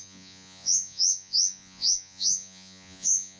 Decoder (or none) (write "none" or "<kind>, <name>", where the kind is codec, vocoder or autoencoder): vocoder, Vocos